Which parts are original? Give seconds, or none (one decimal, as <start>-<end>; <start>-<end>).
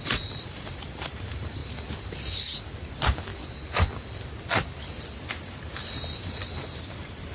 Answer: 1.6-2.9; 3.3-5.3